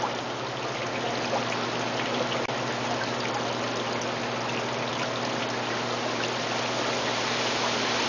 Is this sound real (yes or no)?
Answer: yes